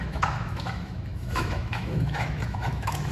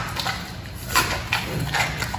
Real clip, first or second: second